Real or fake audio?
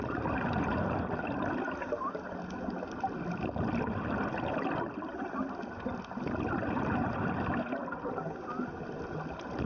real